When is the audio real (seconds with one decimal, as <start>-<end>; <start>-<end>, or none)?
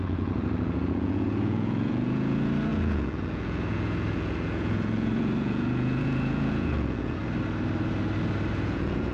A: 7.2-8.5